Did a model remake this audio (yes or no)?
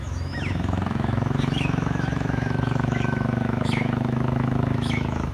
yes